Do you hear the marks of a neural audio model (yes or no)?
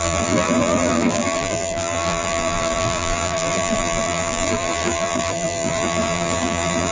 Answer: yes